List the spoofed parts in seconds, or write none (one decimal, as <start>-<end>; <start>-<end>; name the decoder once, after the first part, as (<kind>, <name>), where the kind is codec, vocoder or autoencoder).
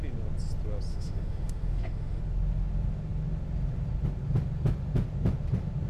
0.9-2.2 (autoencoder, DAC-VAE)